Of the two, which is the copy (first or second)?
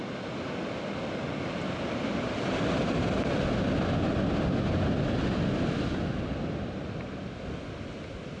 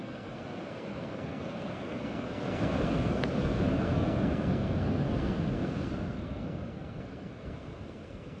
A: second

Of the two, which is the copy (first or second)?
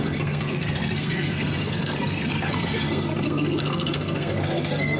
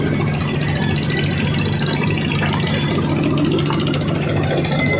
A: first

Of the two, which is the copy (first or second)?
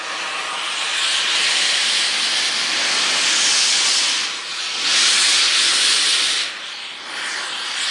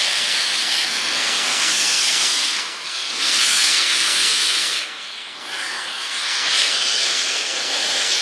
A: second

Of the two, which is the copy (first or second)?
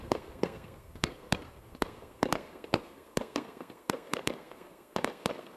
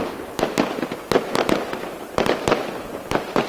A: first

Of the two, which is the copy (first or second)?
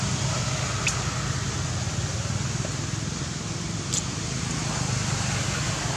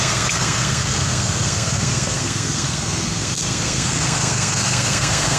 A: second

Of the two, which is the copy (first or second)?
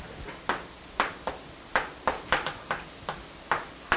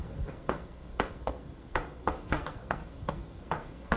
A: second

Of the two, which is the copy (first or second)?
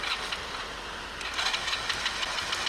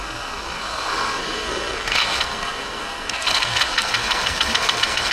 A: second